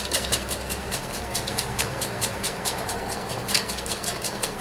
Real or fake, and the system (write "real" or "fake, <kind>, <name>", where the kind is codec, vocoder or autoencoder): fake, codec, SNAC